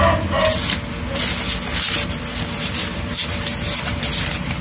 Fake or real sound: real